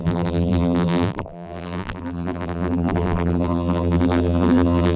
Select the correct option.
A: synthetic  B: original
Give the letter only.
A